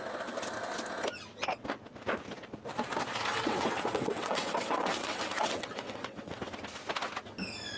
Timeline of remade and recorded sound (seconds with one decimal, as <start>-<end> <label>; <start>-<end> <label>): 0.0-3.3 recorded; 3.3-6.4 remade; 6.4-7.8 recorded